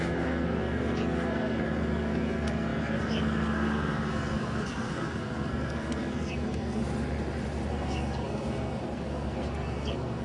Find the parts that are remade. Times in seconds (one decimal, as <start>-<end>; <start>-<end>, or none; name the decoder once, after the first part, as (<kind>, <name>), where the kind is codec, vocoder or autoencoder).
0.0-6.8 (codec, SNAC); 7.7-10.2